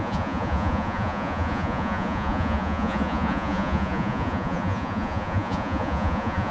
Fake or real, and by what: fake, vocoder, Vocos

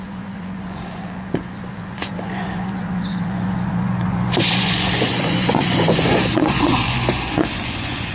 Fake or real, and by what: fake, vocoder, Vocos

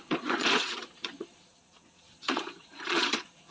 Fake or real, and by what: fake, vocoder, Vocos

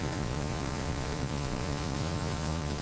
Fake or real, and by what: fake, vocoder, Vocos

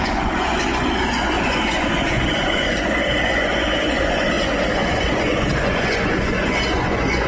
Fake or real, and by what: fake, vocoder, Vocos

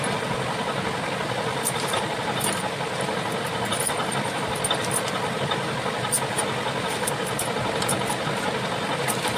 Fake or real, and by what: real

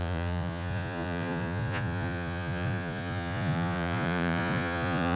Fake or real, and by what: fake, vocoder, Vocos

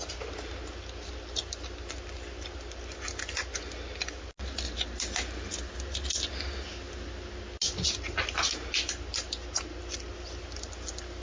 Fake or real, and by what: real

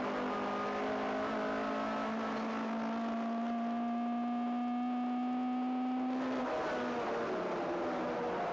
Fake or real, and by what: real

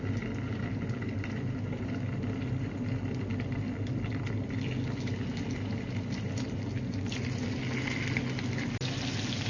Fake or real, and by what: real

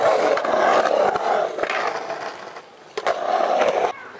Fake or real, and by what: real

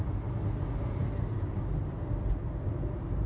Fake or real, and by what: real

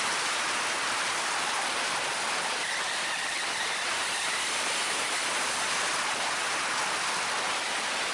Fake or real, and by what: real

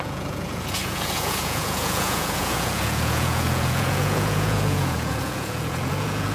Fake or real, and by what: fake, vocoder, Vocos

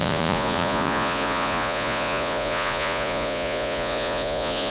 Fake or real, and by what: fake, vocoder, Vocos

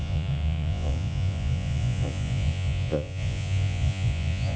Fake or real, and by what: fake, vocoder, Vocos